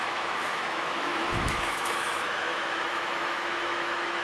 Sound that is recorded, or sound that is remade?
remade